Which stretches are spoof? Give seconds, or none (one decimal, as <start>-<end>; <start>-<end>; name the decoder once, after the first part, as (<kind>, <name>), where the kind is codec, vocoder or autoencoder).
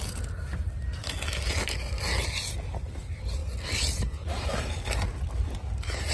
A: none